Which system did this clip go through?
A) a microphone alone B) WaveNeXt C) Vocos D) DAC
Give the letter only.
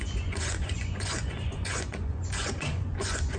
C